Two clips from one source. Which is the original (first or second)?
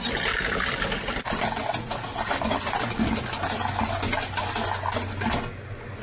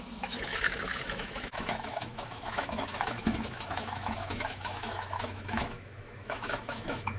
first